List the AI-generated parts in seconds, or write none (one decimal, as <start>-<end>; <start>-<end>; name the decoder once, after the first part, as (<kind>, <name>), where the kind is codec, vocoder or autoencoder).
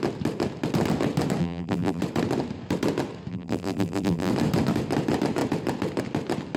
1.4-2.0 (vocoder, BigVGAN v2); 3.3-4.3